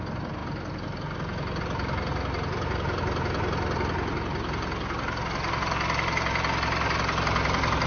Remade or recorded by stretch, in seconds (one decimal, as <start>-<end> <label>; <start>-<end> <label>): 0.0-7.9 recorded